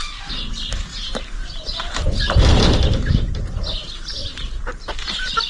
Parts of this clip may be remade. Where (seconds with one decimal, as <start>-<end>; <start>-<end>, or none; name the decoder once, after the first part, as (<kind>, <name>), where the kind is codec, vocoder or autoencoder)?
0.9-2.6 (vocoder, BigVGAN v2); 4.2-5.1